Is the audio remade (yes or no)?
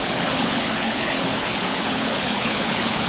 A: yes